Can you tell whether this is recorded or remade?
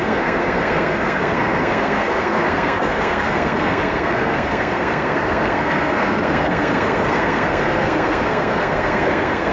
remade